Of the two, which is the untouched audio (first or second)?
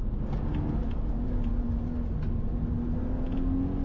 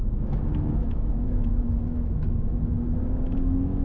first